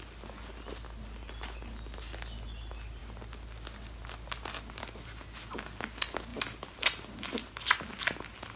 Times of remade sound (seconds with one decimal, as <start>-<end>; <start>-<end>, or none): none